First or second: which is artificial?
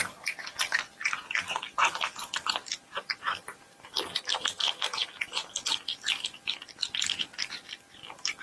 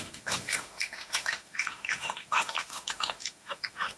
second